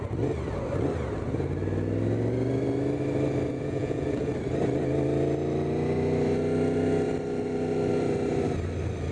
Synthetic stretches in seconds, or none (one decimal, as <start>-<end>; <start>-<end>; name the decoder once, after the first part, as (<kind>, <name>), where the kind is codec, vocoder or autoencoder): 3.5-4.3 (vocoder, Vocos)

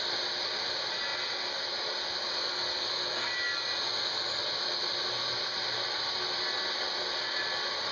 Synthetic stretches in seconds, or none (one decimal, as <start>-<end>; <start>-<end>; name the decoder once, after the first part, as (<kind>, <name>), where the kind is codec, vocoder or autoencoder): none

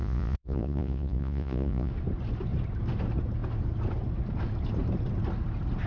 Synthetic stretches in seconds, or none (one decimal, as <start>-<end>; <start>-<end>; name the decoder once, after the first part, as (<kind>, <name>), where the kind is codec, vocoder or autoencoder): 0.0-1.9 (vocoder, Vocos)

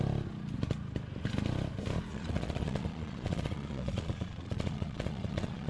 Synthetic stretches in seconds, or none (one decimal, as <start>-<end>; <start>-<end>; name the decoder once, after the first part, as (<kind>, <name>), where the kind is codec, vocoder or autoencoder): 2.1-5.7 (vocoder, Vocos)

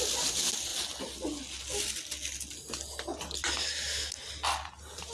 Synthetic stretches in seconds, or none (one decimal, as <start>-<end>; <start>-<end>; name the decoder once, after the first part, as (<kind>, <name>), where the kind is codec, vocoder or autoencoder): none

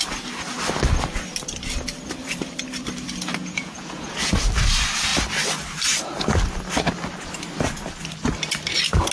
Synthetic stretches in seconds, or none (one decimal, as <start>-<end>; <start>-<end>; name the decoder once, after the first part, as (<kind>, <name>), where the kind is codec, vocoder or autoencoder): 3.4-4.3 (vocoder, Vocos)

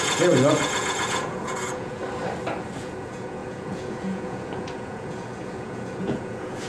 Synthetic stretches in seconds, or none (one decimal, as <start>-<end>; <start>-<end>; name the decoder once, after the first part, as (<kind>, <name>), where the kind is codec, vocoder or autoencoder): 0.0-2.0 (vocoder, Vocos); 2.8-6.7

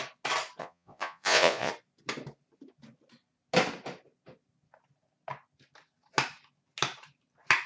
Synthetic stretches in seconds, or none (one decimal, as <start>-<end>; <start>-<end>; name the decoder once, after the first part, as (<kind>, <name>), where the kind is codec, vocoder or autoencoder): 0.6-1.7 (vocoder, Vocos)